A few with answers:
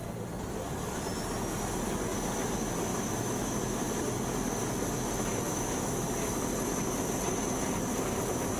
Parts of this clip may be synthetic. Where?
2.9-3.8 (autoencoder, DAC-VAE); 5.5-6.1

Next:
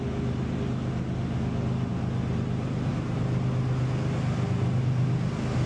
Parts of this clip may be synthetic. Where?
none

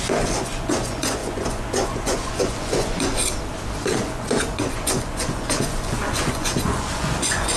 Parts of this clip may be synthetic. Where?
0.0-3.1 (vocoder, Vocos); 4.0-7.6